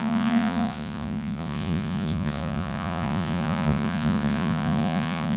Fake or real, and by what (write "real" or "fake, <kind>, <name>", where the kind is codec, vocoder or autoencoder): fake, vocoder, Vocos